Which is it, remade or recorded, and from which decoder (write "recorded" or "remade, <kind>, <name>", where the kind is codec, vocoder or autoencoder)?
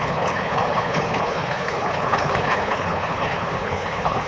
remade, codec, HILCodec